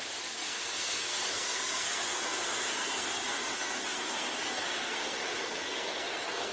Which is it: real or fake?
fake